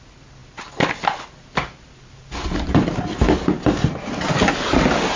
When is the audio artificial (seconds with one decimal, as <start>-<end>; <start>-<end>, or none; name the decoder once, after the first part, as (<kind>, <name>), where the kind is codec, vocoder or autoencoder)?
none